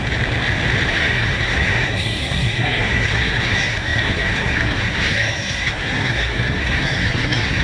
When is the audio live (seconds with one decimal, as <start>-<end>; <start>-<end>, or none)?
0.0-0.9